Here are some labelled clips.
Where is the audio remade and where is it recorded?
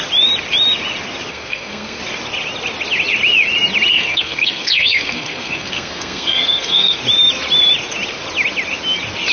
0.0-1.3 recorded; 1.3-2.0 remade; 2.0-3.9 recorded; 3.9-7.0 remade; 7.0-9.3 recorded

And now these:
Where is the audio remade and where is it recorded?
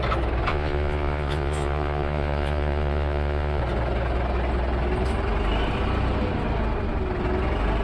0.0-0.5 recorded; 0.5-3.6 remade; 3.6-7.8 recorded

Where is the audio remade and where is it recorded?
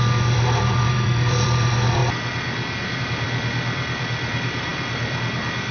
0.0-2.0 remade; 2.0-3.0 recorded; 3.0-5.7 remade